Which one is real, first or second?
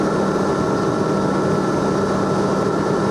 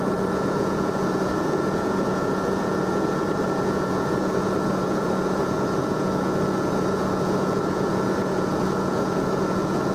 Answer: first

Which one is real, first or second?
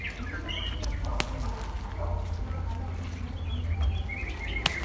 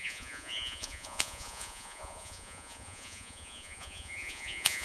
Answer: first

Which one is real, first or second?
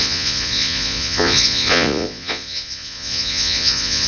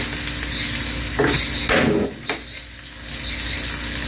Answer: second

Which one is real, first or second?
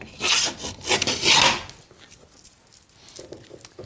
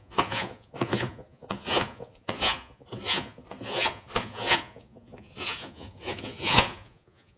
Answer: first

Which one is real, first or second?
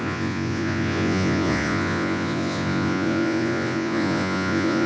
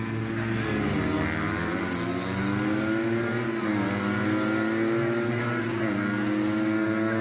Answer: second